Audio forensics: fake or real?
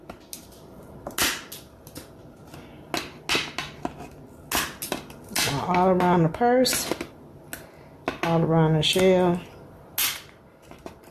real